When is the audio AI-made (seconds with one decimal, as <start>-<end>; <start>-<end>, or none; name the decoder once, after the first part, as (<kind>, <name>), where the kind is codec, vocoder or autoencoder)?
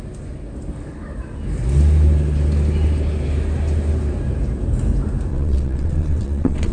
5.3-6.7 (vocoder, WaveNeXt)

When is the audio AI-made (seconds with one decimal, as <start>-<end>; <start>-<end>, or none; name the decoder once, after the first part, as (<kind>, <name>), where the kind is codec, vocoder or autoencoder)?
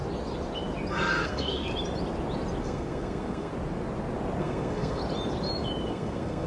0.9-1.7 (codec, SNAC); 2.6-3.5; 4.4-5.0; 5.9-6.5